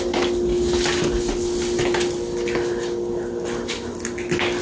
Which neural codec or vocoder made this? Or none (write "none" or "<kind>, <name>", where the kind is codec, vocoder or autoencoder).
none